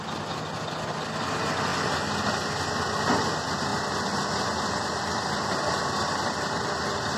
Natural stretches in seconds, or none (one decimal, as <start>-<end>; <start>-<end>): 0.0-7.2